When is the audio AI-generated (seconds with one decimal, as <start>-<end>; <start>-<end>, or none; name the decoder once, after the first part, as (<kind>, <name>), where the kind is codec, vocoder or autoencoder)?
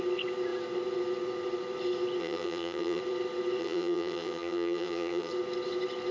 2.2-3.0 (vocoder, HiFi-GAN); 3.6-5.3